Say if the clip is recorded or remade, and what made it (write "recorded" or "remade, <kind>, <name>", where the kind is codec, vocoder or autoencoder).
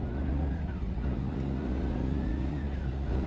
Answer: remade, vocoder, Vocos